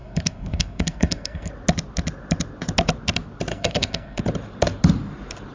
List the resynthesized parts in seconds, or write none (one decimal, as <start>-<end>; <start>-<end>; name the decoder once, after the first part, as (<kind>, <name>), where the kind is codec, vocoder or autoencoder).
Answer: 0.0-1.5 (codec, SNAC); 3.5-4.2